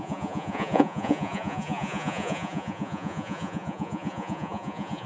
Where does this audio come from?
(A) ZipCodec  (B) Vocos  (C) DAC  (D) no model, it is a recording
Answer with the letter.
B